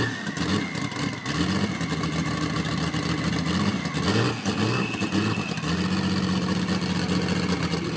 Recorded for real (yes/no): yes